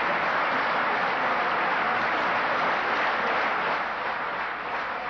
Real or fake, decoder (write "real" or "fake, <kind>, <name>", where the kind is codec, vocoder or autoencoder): real